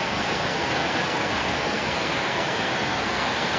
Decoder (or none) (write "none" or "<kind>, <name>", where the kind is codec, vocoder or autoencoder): codec, SNAC